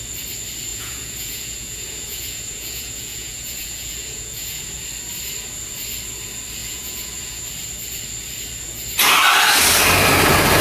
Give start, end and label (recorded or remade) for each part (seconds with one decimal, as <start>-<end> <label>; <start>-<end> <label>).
0.0-0.7 recorded; 0.7-4.8 remade; 4.8-6.6 recorded; 6.6-7.4 remade; 7.4-10.6 recorded